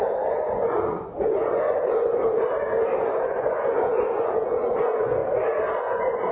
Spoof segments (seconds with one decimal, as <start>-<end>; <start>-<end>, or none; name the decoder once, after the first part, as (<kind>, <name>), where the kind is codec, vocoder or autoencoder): 0.0-2.1 (vocoder, Vocos); 3.0-5.2; 5.8-6.3